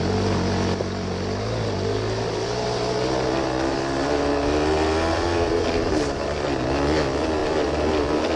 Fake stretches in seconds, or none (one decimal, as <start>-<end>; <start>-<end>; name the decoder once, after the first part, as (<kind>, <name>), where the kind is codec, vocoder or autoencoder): none